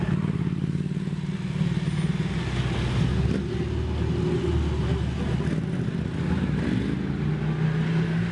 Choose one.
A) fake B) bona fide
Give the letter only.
B